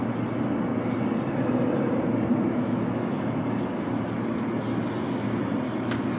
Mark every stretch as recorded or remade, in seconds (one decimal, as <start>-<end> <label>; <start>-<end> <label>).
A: 0.0-2.3 recorded; 2.3-3.4 remade; 3.4-6.2 recorded